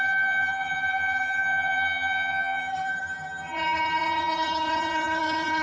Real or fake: fake